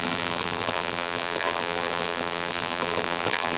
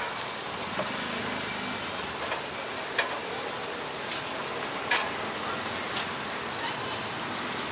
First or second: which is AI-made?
first